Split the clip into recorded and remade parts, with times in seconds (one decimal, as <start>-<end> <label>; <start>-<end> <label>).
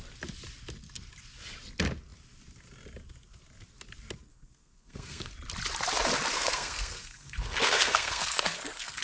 0.0-4.3 recorded; 4.3-5.3 remade; 5.3-6.3 recorded; 6.3-9.0 remade